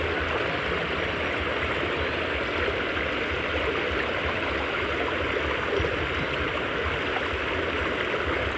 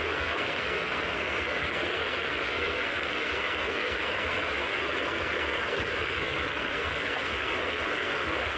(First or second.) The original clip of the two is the first